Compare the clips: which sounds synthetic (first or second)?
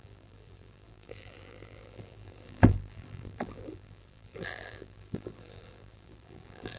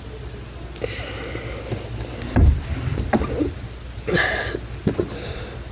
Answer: first